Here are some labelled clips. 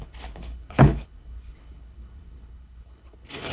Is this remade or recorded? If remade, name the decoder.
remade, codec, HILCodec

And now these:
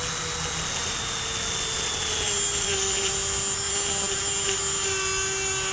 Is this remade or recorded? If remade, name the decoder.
recorded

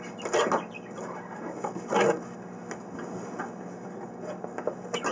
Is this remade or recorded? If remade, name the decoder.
recorded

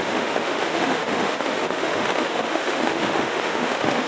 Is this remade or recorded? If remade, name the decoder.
remade, autoencoder, DAC-VAE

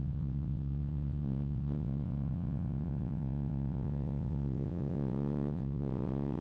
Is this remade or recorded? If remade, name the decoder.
remade, vocoder, WaveNeXt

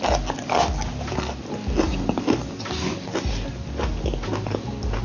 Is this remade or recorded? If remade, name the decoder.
recorded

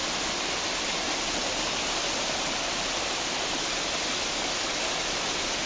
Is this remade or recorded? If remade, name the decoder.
recorded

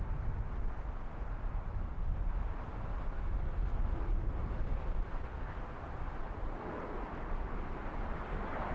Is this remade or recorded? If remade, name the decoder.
recorded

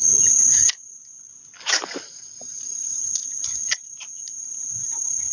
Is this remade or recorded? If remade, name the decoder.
recorded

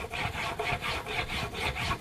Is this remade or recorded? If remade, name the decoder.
remade, vocoder, BigVGAN v2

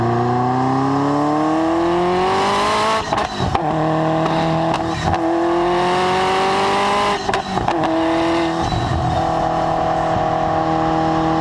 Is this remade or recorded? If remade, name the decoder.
recorded